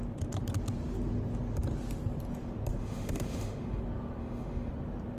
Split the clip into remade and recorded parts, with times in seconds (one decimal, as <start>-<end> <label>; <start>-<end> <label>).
0.0-2.8 recorded; 2.8-3.8 remade; 3.8-4.2 recorded; 4.2-4.7 remade; 4.7-5.2 recorded